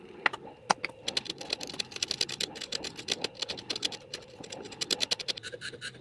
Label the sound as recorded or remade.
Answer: recorded